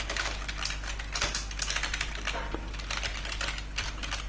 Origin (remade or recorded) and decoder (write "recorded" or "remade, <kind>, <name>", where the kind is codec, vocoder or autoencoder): recorded